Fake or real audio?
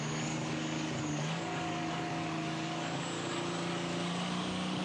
fake